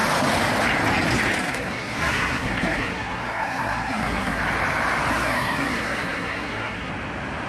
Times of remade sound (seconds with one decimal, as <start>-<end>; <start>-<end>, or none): 1.4-4.4; 5.1-6.9